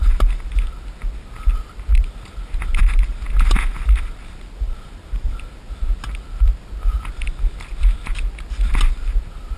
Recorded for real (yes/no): yes